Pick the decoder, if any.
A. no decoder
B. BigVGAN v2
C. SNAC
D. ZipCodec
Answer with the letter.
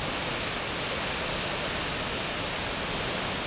A